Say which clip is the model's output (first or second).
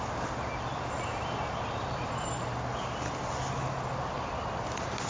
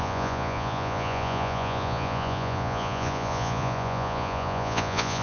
second